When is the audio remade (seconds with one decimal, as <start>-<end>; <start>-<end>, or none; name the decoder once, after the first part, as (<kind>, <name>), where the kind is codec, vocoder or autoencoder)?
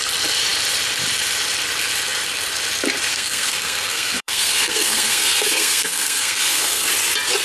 3.1-6.9 (codec, SNAC)